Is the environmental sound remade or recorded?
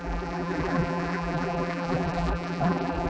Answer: remade